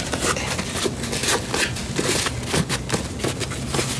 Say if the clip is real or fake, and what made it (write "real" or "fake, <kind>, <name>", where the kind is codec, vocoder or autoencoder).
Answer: real